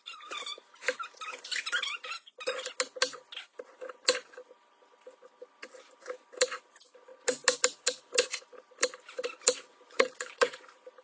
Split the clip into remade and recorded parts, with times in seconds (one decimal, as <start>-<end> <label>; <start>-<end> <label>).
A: 0.0-9.7 recorded; 9.7-10.5 remade; 10.5-11.0 recorded